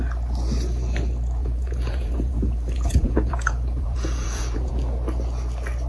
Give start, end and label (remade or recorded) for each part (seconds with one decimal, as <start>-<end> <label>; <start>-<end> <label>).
0.0-1.4 recorded; 1.4-4.7 remade; 4.7-5.9 recorded